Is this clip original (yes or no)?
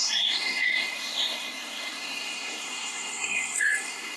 no